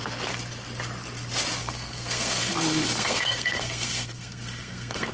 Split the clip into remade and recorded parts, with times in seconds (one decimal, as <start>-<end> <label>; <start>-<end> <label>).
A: 0.0-1.6 recorded; 1.6-5.1 remade

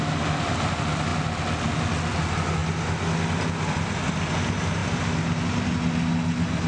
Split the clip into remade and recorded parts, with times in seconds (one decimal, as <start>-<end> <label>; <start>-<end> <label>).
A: 0.0-6.7 recorded

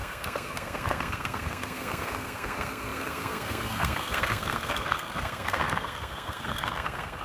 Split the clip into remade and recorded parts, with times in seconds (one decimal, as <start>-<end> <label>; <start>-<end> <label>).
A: 0.0-7.2 remade

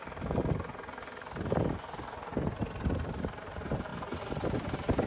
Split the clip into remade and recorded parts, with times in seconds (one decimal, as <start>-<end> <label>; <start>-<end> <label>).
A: 0.0-5.1 recorded